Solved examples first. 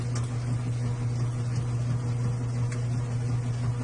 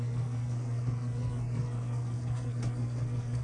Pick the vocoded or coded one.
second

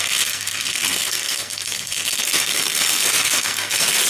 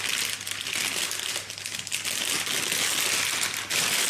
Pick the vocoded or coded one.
first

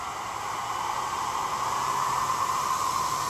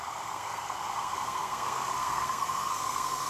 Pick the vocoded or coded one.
second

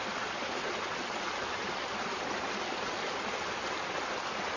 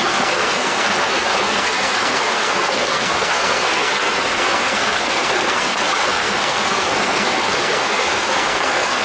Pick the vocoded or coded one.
second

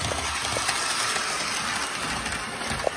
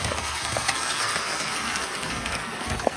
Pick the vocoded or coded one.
second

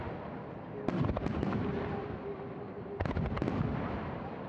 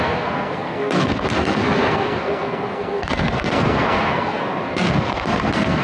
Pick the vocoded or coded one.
second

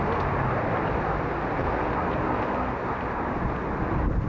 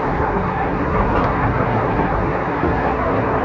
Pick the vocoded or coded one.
second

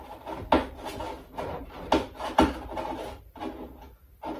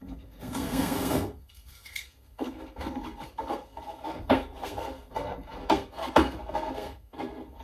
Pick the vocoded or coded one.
second